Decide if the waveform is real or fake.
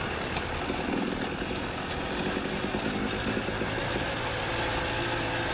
real